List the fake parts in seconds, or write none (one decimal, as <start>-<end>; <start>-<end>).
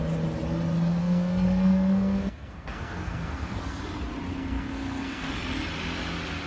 1.0-3.8; 4.3-5.3